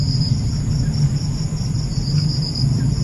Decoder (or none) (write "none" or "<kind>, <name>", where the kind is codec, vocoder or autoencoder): none